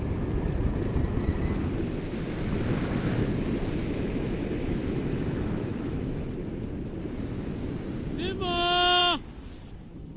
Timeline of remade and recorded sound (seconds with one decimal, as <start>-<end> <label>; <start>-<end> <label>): 0.0-3.8 recorded; 3.8-6.3 remade; 6.3-10.2 recorded